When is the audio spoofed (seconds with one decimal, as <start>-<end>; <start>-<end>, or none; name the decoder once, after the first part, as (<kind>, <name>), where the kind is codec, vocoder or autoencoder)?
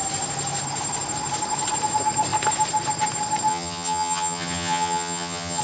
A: 3.5-5.6 (vocoder, HiFi-GAN)